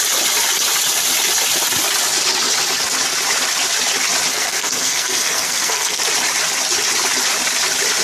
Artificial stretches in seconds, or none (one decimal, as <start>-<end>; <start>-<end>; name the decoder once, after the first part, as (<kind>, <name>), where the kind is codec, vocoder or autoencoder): 4.3-6.0 (codec, SNAC)